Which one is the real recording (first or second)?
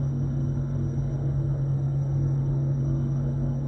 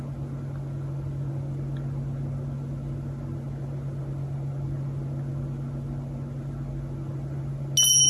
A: second